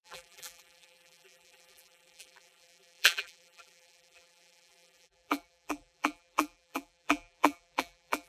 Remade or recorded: remade